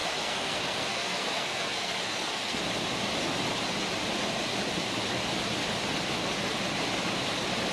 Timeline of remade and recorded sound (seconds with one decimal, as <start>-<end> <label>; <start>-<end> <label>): 0.0-2.6 remade; 2.6-7.7 recorded